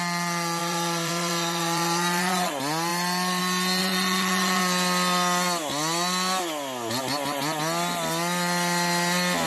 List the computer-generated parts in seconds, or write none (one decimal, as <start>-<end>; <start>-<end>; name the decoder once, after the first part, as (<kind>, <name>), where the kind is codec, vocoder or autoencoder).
0.6-2.5 (vocoder, Vocos); 3.8-4.6